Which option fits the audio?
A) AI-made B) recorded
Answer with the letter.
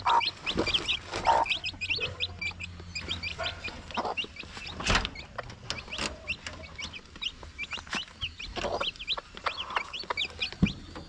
B